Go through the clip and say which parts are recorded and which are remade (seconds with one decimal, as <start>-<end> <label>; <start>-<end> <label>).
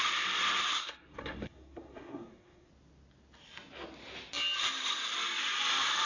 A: 0.0-0.8 recorded; 0.8-2.7 remade; 2.7-6.1 recorded